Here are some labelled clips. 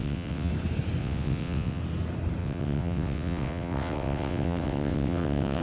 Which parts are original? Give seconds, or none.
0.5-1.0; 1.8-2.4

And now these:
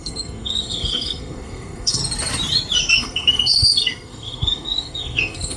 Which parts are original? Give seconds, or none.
2.0-2.9

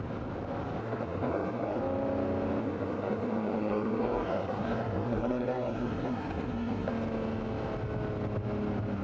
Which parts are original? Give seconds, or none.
0.0-0.8; 1.8-2.6; 6.9-9.0

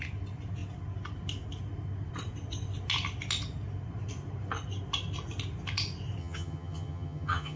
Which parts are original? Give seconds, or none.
0.0-6.2

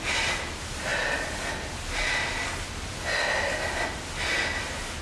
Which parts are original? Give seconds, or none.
0.0-5.0

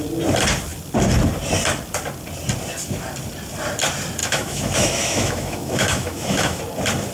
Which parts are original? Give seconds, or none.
0.0-4.2; 6.6-7.1